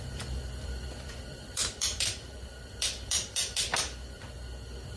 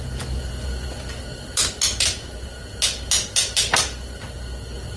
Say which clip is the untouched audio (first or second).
second